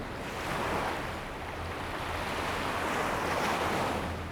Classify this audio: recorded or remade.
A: recorded